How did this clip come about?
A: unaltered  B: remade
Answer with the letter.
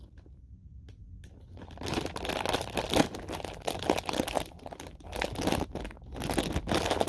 A